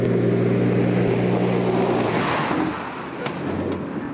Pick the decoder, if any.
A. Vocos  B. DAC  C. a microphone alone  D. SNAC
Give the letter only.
C